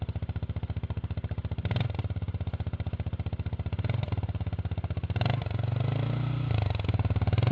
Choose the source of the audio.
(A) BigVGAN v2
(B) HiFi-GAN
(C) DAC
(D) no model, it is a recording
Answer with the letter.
D